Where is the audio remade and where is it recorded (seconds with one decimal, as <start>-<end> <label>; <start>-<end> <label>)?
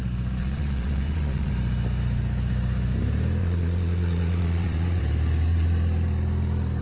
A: 0.0-0.4 recorded; 0.4-1.5 remade; 1.5-3.4 recorded; 3.4-5.0 remade; 5.0-6.8 recorded